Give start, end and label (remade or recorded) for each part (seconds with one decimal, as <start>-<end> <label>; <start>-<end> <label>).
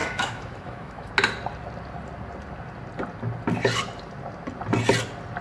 0.0-1.1 remade; 1.1-5.4 recorded